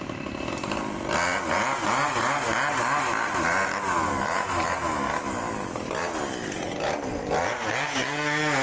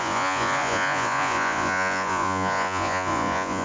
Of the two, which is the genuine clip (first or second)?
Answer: first